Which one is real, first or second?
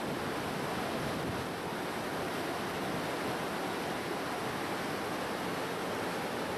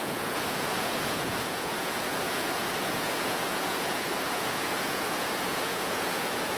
first